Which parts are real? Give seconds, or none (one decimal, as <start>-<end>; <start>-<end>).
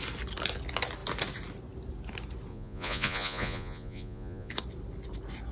0.0-2.5; 4.5-5.5